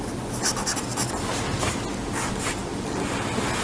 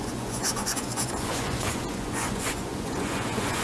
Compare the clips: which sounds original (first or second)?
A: first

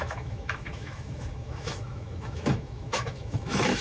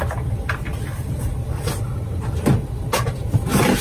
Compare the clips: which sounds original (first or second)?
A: second